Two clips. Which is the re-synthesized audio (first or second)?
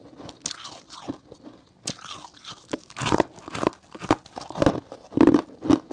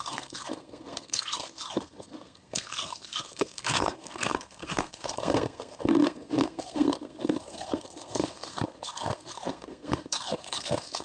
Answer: second